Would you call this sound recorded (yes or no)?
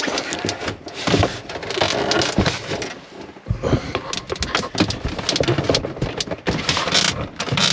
yes